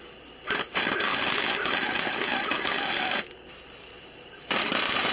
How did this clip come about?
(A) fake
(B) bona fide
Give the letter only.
B